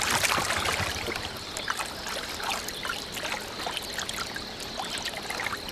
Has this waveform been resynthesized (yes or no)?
no